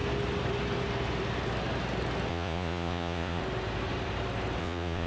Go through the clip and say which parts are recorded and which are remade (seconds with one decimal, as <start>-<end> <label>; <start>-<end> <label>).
0.0-2.3 recorded; 2.3-3.4 remade; 3.4-4.6 recorded; 4.6-5.1 remade